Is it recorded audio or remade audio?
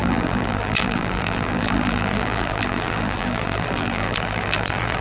remade